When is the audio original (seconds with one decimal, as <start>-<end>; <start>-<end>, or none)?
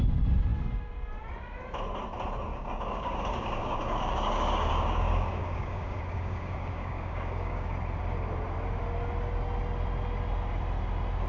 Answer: 0.0-2.5; 7.7-11.3